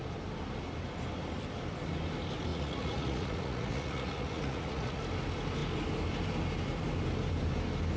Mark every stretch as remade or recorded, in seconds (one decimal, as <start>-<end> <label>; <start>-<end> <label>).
0.0-2.5 recorded; 2.5-5.0 remade; 5.0-8.0 recorded